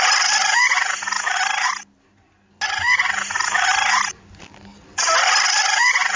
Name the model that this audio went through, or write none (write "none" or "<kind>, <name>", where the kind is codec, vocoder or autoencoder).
none